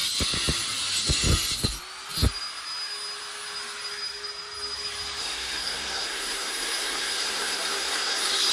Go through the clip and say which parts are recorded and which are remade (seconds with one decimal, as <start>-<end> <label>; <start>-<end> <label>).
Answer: 0.0-5.2 recorded; 5.2-8.5 remade